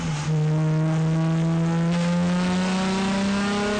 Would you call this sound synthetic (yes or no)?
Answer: no